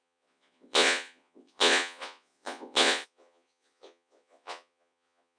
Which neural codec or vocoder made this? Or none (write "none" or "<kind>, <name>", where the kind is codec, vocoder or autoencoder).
vocoder, Vocos